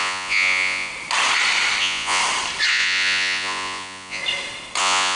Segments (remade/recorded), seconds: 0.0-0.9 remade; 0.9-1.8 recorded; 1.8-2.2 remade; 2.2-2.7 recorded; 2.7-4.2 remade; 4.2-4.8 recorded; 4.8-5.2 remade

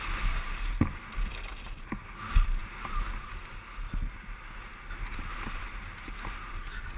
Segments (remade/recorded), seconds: 0.0-7.0 recorded

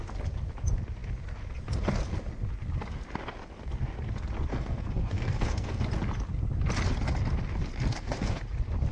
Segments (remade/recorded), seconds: 0.0-4.5 recorded; 4.5-5.8 remade; 5.8-7.9 recorded; 7.9-8.4 remade; 8.4-8.9 recorded

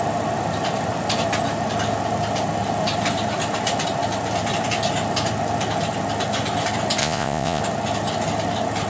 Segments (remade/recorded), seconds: 0.0-7.0 recorded; 7.0-7.6 remade; 7.6-8.9 recorded

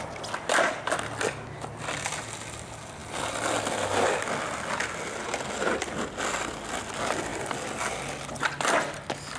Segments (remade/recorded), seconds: 0.0-9.4 recorded

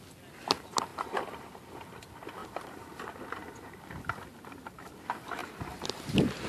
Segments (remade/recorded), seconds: 0.0-2.4 recorded; 2.4-3.2 remade; 3.2-4.3 recorded; 4.3-4.9 remade; 4.9-5.4 recorded; 5.4-6.5 remade